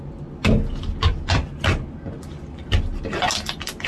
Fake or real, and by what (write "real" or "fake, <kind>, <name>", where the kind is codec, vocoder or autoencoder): real